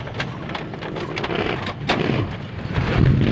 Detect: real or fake real